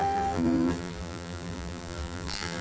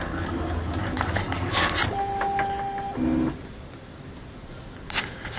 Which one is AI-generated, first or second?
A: first